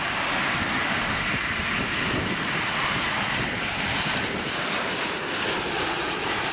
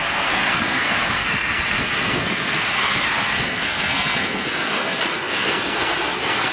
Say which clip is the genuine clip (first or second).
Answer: first